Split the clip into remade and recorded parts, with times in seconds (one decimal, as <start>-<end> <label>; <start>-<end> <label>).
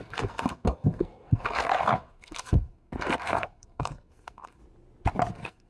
0.0-4.6 remade; 4.6-5.3 recorded; 5.3-5.7 remade